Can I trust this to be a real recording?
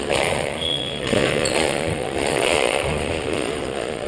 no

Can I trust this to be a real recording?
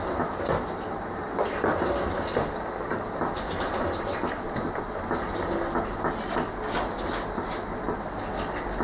yes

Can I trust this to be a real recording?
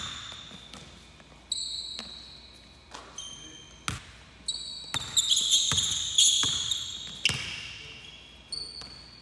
yes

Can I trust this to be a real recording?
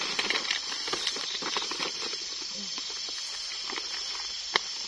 yes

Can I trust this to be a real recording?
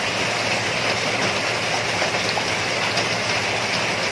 yes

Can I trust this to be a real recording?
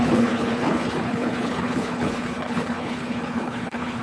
no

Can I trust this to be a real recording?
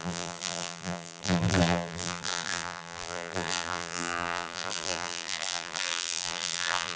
no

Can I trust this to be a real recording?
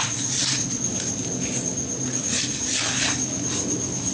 yes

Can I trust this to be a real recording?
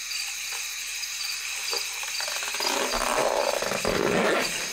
yes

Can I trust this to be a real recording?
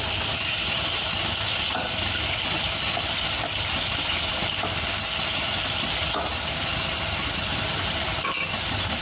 no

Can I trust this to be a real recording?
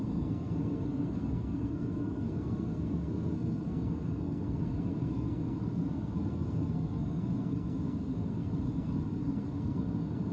no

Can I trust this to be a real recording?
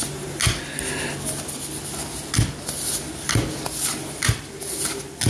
yes